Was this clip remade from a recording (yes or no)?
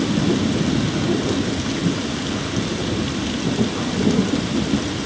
no